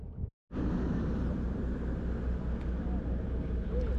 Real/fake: real